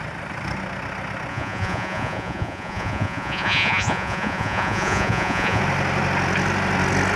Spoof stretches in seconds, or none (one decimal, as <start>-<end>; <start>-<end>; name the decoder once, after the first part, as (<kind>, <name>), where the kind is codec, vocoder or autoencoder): 1.3-5.6 (vocoder, Vocos)